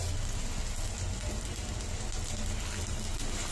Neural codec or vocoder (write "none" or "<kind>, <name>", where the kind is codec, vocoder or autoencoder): none